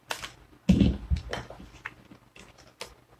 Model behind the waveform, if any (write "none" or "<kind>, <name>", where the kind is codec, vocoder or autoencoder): none